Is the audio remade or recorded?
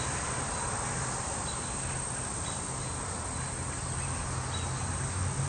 recorded